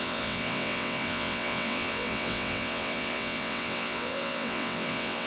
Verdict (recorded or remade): remade